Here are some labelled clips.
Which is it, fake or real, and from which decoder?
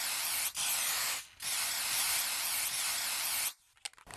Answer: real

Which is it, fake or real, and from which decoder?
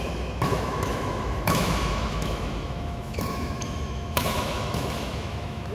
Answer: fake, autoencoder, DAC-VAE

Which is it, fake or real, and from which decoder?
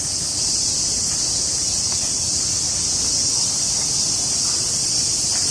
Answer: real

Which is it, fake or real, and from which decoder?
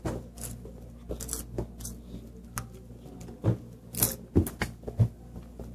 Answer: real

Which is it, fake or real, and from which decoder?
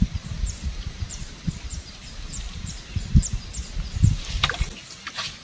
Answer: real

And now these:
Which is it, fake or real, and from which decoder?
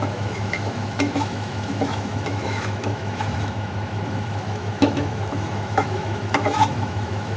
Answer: fake, autoencoder, DAC-VAE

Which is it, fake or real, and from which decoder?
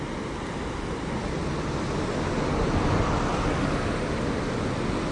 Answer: real